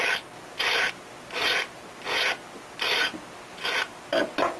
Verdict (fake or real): real